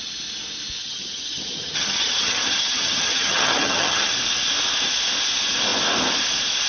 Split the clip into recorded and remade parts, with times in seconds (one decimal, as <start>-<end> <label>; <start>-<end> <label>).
0.0-0.8 recorded; 0.8-4.1 remade; 4.1-6.7 recorded